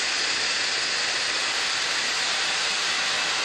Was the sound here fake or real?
real